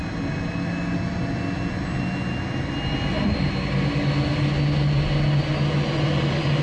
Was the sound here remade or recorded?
recorded